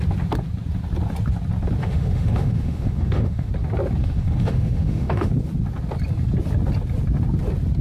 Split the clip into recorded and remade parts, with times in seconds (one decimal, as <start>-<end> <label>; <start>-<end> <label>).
0.0-1.8 recorded; 1.8-3.5 remade; 3.5-4.0 recorded; 4.0-5.3 remade; 5.3-7.8 recorded